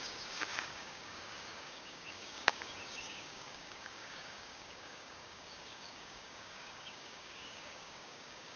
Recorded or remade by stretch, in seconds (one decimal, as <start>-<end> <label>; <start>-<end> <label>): 0.0-8.6 remade